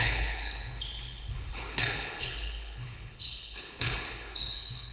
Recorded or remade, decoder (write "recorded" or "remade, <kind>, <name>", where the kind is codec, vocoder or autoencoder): remade, codec, HILCodec